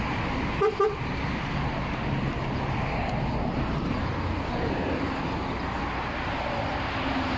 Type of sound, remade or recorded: recorded